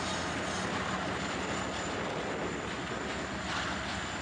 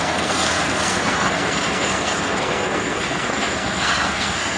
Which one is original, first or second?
first